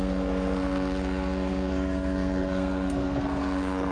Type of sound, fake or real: fake